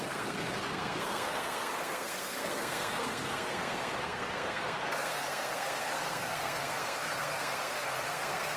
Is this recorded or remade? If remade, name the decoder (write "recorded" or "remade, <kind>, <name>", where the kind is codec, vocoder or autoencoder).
remade, codec, SNAC